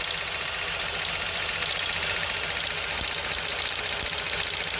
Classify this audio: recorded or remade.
recorded